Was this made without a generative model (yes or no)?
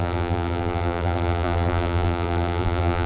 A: no